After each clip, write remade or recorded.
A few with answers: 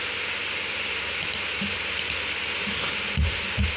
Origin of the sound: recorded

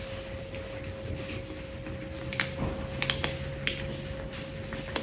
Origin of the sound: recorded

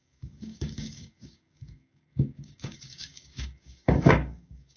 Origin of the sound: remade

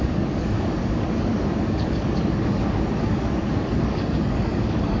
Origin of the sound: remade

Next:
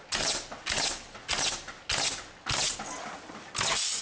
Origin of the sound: recorded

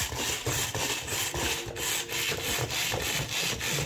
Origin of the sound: recorded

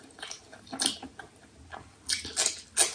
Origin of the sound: recorded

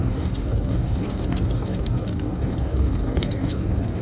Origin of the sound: remade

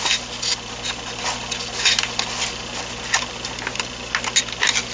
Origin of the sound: recorded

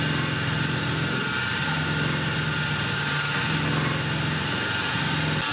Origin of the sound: recorded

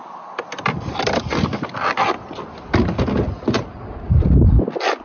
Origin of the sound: recorded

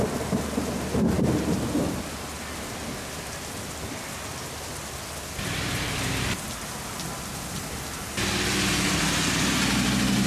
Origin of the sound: recorded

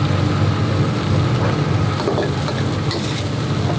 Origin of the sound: recorded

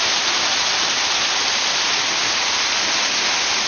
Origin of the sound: recorded